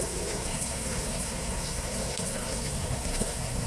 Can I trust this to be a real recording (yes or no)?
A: no